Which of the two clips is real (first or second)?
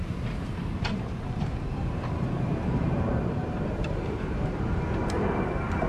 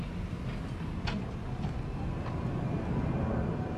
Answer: second